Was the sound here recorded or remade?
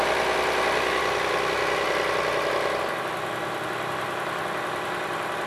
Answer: recorded